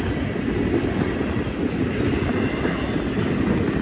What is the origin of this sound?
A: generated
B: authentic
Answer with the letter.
B